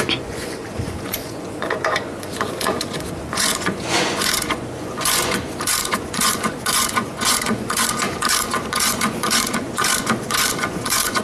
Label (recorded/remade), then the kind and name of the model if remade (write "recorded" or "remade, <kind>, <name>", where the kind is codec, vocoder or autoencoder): remade, vocoder, Vocos